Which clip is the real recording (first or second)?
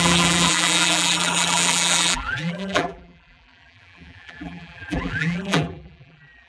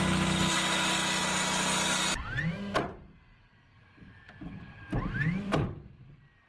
second